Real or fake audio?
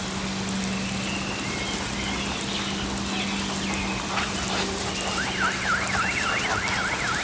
real